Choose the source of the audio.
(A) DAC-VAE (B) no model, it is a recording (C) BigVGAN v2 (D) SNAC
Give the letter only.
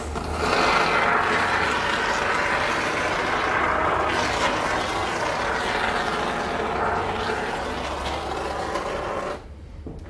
B